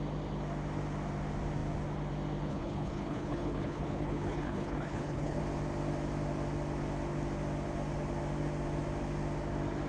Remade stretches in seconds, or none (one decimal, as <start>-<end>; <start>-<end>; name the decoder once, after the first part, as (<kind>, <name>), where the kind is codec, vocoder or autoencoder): 2.5-5.4 (codec, HILCodec)